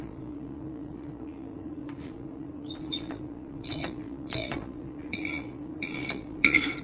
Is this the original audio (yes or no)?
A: no